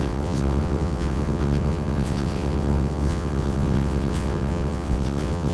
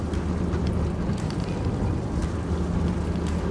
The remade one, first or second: first